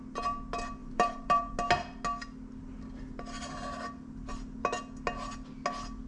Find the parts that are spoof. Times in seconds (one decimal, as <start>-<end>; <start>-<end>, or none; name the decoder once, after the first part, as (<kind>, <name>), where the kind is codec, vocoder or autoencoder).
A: 0.8-1.5 (vocoder, BigVGAN v2)